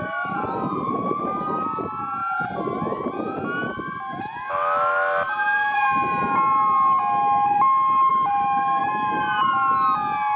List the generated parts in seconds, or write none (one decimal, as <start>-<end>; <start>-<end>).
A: 8.1-8.8

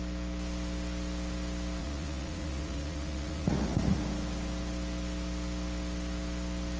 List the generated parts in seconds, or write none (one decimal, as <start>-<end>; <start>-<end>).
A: 1.8-4.0

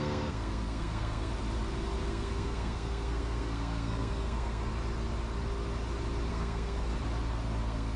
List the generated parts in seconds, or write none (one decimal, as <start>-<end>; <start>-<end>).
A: 0.0-1.3; 2.1-4.7; 6.3-6.9; 7.6-8.0

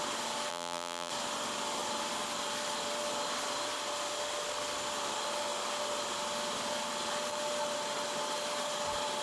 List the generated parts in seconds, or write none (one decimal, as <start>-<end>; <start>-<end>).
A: 0.5-1.1